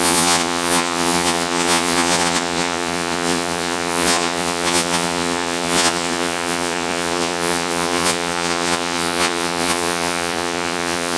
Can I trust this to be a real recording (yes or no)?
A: no